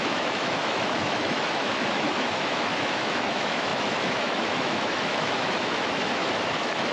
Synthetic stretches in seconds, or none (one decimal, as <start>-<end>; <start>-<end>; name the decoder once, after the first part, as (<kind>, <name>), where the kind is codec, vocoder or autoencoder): 0.0-6.9 (autoencoder, DAC-VAE)